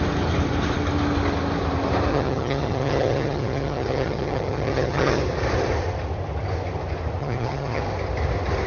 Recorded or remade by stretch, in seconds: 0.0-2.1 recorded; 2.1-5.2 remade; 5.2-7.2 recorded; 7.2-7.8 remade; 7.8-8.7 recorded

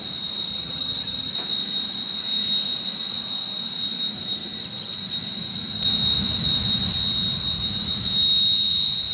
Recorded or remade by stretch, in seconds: 0.0-0.5 recorded; 0.5-1.3 remade; 1.3-9.1 recorded

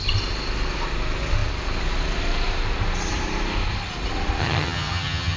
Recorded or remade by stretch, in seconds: 0.0-4.4 recorded; 4.4-5.4 remade

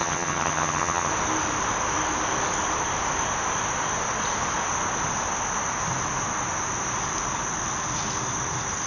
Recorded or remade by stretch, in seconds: 0.0-1.1 remade; 1.1-8.9 recorded

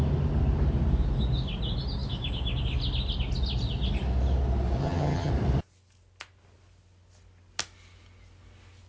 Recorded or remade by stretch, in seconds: 0.0-4.8 recorded; 4.8-5.3 remade; 5.3-8.9 recorded